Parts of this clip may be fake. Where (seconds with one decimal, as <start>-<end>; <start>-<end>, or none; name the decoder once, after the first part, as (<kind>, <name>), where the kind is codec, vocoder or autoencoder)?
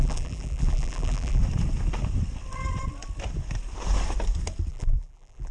0.0-1.4 (vocoder, BigVGAN v2); 4.7-5.5